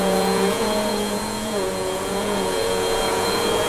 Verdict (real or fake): fake